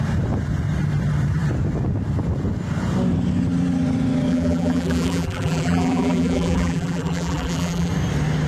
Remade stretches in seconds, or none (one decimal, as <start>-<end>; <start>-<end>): 4.3-7.9